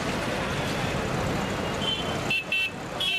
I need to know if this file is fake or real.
real